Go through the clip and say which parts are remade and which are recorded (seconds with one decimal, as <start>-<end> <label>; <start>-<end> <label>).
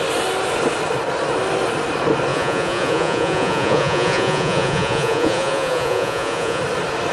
0.0-2.3 recorded; 2.3-6.6 remade; 6.6-7.1 recorded